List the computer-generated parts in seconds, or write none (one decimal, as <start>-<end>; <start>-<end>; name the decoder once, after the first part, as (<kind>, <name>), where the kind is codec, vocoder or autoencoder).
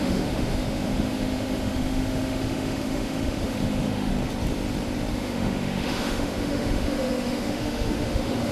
0.0-4.1 (autoencoder, DAC-VAE); 5.1-8.5